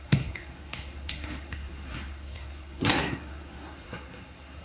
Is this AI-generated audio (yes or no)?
yes